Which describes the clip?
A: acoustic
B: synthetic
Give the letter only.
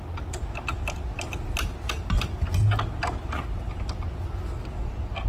A